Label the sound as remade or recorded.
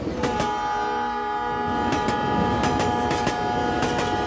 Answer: recorded